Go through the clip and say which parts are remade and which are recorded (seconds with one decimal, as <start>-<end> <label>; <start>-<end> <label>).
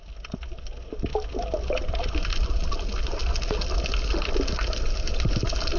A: 0.0-5.8 recorded